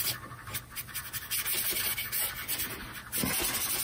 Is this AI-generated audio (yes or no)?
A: no